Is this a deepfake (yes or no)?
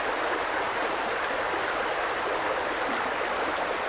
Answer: no